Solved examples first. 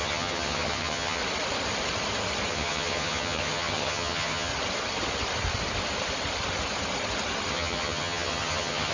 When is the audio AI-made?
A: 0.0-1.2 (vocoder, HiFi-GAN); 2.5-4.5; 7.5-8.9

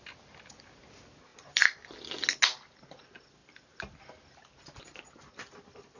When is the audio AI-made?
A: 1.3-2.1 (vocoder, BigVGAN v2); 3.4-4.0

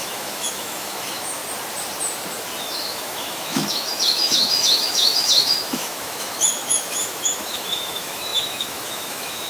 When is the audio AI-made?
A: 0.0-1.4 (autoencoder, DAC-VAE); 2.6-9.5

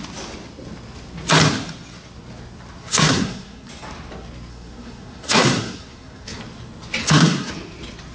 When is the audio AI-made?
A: 2.8-3.7 (codec, SNAC); 4.5-6.4; 7.0-7.5

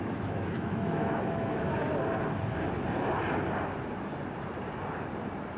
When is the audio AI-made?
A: 0.0-1.8 (autoencoder, DAC-VAE)

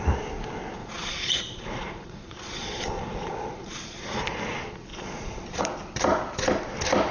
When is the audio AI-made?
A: 0.8-4.2 (vocoder, Vocos); 4.9-5.6

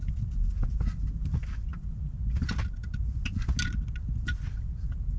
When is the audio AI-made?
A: none